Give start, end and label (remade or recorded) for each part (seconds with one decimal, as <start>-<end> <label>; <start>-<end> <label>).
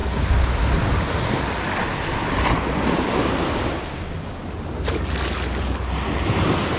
0.0-6.8 recorded